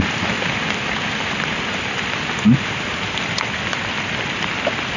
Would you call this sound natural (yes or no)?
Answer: yes